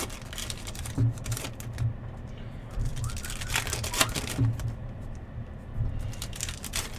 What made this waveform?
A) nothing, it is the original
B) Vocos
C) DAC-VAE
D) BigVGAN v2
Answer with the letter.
D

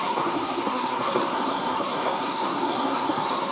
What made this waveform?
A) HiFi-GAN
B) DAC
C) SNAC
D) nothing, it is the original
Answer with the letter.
C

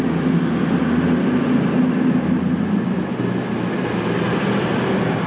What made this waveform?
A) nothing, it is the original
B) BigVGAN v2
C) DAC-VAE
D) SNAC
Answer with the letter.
A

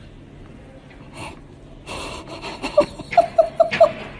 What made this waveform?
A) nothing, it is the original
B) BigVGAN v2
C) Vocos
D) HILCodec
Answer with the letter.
A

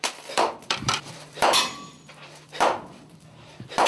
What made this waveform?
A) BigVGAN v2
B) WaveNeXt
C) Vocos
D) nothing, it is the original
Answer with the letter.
A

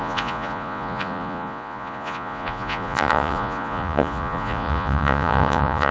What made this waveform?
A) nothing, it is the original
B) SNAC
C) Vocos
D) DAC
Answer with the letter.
C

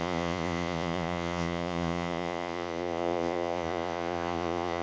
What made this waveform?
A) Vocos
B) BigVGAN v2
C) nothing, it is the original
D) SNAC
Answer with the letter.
A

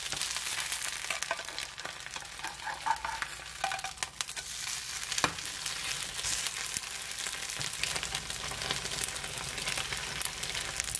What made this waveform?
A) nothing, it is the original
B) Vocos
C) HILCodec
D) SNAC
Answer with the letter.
A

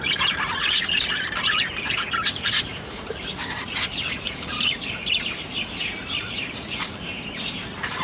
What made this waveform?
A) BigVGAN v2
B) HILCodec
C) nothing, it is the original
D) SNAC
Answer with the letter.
A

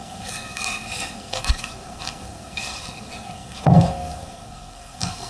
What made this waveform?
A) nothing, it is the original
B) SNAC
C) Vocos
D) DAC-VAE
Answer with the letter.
B